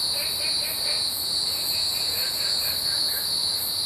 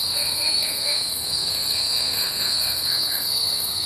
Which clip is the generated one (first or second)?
second